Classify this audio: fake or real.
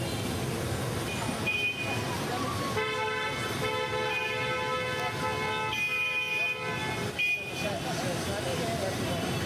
real